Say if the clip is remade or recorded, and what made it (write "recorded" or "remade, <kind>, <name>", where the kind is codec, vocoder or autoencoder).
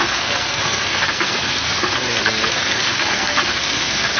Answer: remade, codec, SNAC